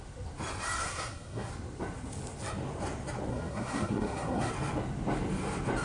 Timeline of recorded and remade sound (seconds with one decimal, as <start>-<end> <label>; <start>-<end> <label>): 0.0-0.8 recorded; 0.8-1.5 remade; 1.5-3.3 recorded; 3.3-4.5 remade; 4.5-5.8 recorded